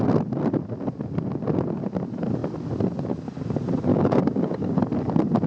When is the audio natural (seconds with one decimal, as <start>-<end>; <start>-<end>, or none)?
0.0-3.9; 4.8-5.5